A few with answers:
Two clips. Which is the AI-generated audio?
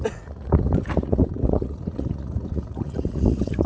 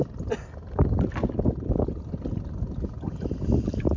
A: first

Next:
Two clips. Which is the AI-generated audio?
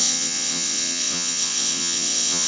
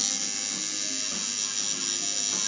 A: first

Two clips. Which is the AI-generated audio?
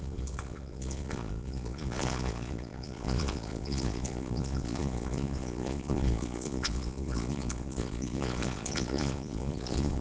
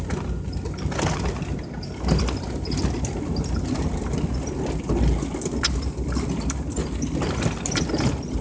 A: first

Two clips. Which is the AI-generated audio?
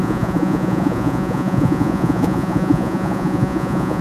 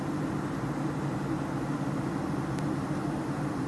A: first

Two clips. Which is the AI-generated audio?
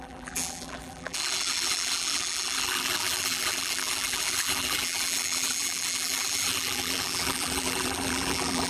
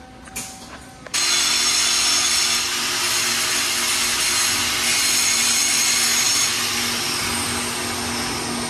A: first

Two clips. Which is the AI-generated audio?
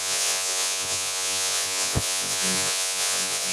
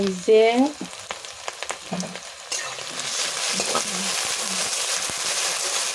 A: first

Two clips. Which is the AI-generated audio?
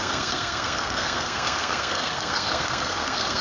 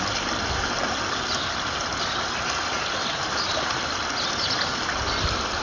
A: first